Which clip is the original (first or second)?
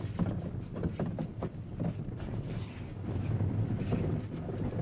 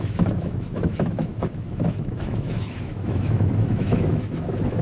first